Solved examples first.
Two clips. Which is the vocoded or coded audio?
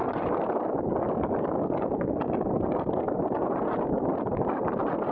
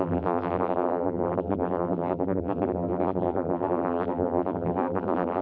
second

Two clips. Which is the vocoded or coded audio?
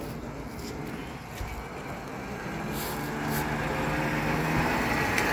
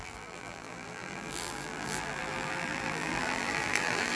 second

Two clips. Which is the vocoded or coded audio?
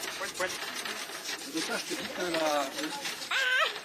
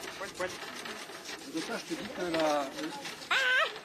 first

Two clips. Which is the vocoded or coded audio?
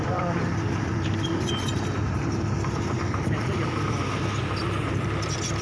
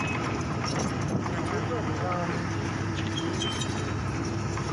first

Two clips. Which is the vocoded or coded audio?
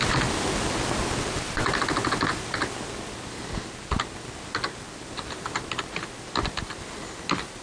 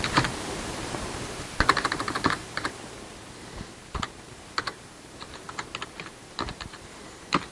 second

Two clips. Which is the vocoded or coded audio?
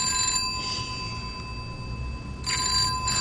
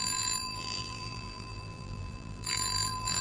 second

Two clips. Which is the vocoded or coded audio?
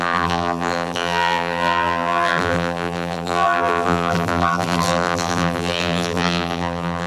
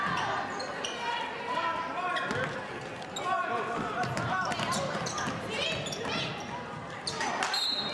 first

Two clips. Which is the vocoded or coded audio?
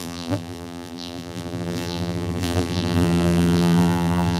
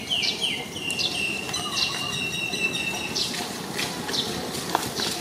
first